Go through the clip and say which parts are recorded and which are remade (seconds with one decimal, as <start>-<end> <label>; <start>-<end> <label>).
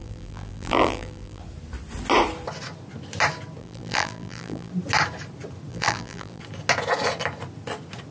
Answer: 0.0-1.4 remade; 1.4-3.6 recorded; 3.6-4.7 remade; 4.7-5.7 recorded; 5.7-6.4 remade; 6.4-8.1 recorded